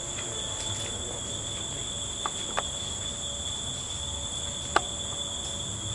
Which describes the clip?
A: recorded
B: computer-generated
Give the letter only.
A